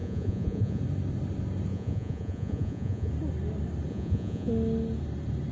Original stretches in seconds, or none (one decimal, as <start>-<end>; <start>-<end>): 0.8-1.7; 3.1-3.9; 4.5-5.5